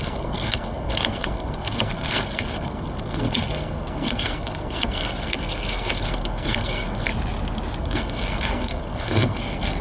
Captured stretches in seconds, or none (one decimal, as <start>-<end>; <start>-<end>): 7.1-7.8